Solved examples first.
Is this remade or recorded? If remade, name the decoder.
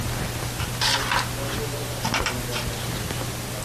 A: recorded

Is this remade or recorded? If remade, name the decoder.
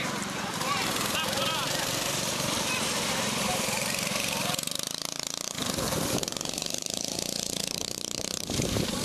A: remade, vocoder, BigVGAN v2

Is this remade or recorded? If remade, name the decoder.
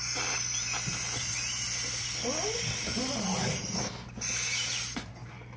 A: recorded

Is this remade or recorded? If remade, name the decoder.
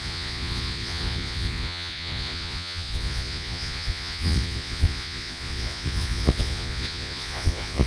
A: remade, vocoder, Vocos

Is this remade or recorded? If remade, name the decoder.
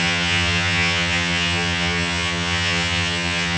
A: remade, vocoder, HiFi-GAN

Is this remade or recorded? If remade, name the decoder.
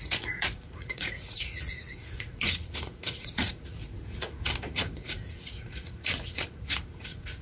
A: remade, vocoder, Vocos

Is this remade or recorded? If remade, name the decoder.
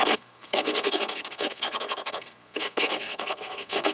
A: remade, codec, SNAC